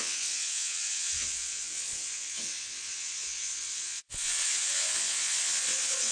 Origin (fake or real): fake